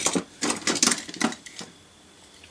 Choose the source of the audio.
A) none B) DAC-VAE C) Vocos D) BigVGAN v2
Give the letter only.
A